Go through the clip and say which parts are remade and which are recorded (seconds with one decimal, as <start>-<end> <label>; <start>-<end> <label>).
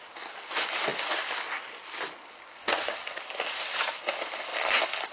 0.0-2.6 recorded; 2.6-3.2 remade; 3.2-5.1 recorded